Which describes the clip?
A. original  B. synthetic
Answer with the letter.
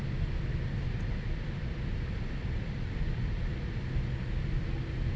A